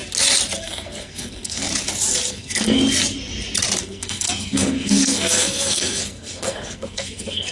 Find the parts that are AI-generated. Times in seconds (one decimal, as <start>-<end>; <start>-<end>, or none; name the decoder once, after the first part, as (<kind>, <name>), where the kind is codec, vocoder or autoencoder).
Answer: 0.6-1.7 (codec, SNAC); 2.3-2.8; 3.8-7.5